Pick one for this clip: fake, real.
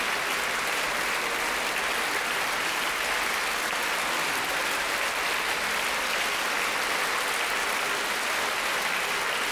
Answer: real